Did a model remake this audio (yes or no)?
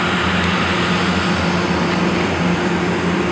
no